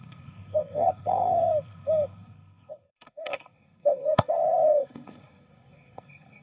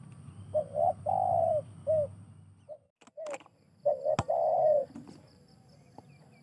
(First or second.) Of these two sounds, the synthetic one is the first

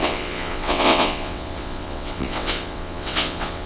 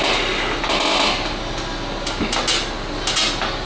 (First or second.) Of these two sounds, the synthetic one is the first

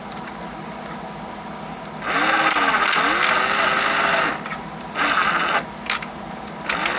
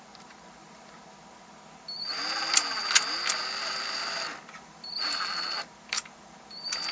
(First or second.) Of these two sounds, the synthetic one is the second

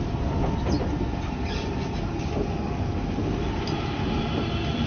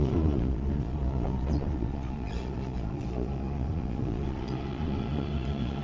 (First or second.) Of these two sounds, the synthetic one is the second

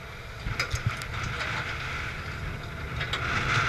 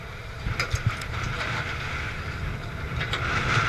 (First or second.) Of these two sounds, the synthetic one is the second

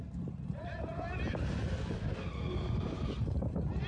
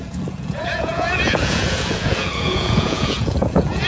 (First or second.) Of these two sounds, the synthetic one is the second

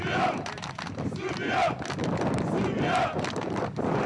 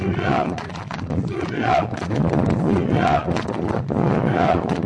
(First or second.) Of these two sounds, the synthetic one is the second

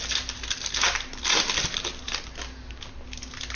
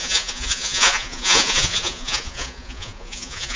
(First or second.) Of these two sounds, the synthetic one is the second